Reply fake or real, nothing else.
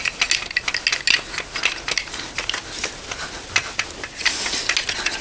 real